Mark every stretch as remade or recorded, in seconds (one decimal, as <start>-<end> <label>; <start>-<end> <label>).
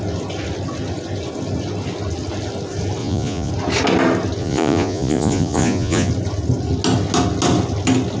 0.0-3.0 recorded; 3.0-3.5 remade; 3.5-4.4 recorded; 4.4-6.1 remade; 6.1-8.2 recorded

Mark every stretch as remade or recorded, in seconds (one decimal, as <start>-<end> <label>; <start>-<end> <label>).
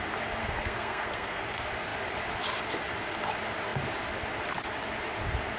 0.0-0.4 recorded; 0.4-1.4 remade; 1.4-5.6 recorded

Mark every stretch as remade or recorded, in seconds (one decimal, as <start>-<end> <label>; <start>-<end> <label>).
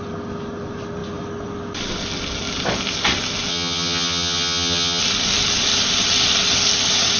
0.0-3.5 recorded; 3.5-5.0 remade; 5.0-7.2 recorded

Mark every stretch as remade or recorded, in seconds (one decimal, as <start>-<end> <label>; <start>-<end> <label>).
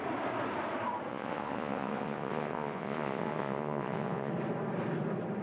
0.0-1.1 recorded; 1.1-4.3 remade; 4.3-5.4 recorded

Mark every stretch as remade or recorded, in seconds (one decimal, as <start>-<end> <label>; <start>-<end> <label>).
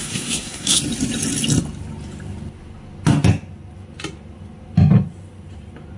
0.0-0.8 remade; 0.8-6.0 recorded